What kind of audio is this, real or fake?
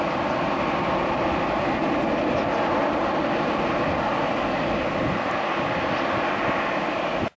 real